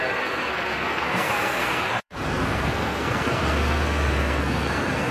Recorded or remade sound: remade